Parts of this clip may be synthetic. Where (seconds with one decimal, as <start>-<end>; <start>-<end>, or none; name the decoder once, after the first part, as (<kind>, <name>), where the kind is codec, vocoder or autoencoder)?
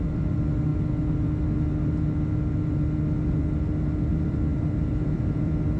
0.0-0.7 (vocoder, BigVGAN v2); 4.1-5.8